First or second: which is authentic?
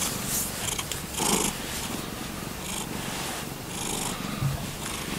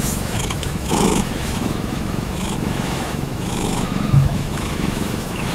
first